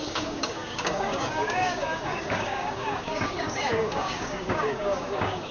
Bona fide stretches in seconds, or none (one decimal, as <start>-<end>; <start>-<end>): none